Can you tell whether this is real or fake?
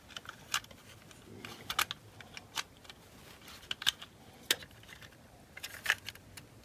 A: real